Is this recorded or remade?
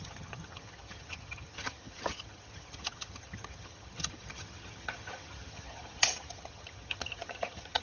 remade